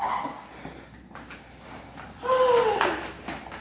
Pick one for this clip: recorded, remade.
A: recorded